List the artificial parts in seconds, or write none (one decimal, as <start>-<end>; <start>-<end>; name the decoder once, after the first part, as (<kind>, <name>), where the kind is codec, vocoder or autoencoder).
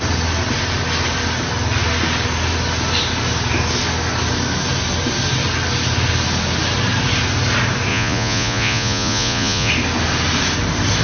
7.9-9.7 (vocoder, Vocos)